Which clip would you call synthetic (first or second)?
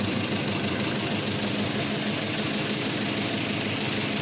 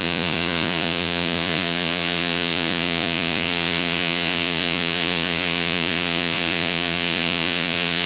second